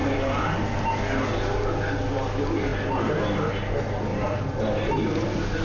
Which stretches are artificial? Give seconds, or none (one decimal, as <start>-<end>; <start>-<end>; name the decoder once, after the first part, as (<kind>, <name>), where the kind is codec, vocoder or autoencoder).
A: 0.0-0.5 (vocoder, BigVGAN v2); 4.1-4.9